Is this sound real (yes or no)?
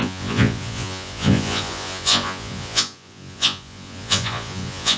no